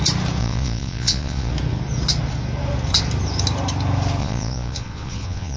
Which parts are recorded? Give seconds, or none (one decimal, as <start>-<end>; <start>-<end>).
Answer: 0.0-0.4; 1.5-4.2